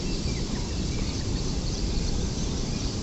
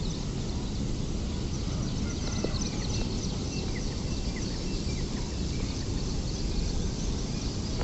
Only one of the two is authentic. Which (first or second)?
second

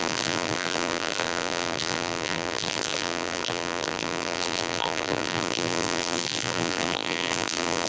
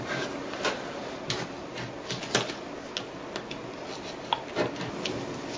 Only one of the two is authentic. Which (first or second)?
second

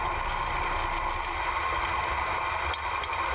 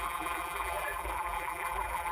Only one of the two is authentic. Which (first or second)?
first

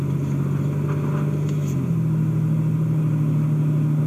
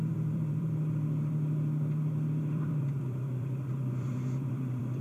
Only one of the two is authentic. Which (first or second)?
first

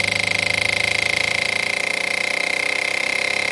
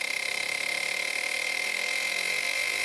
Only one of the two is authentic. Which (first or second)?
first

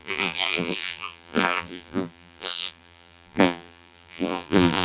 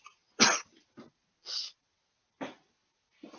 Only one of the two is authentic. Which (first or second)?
second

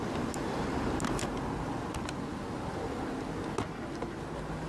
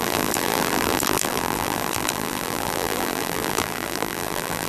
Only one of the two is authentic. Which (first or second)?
first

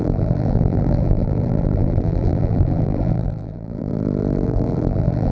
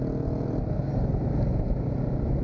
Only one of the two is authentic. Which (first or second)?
second